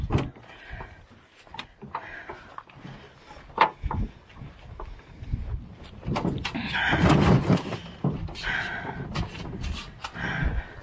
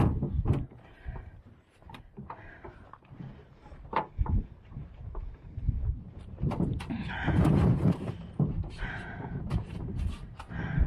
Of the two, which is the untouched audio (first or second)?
first